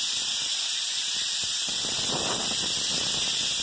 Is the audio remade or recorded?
recorded